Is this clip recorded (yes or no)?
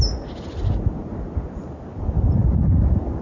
yes